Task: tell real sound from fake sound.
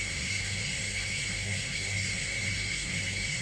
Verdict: fake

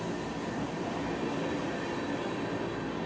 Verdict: real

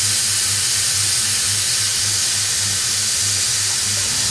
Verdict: real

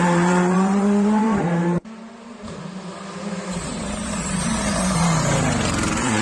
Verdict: fake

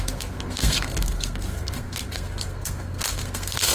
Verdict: fake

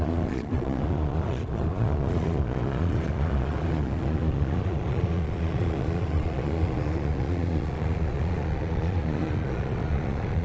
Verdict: fake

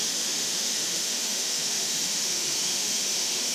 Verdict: fake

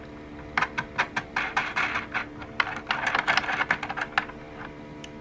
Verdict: real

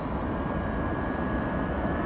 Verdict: real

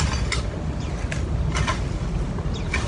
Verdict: real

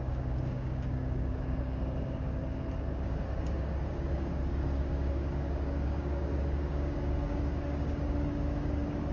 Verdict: fake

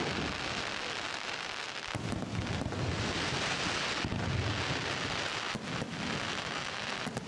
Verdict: real